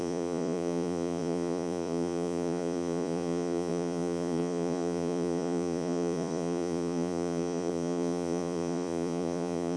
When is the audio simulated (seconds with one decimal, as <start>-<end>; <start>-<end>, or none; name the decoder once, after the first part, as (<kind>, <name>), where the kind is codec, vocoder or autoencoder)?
0.0-9.8 (vocoder, Vocos)